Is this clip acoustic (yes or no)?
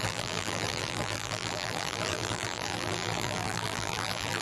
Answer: no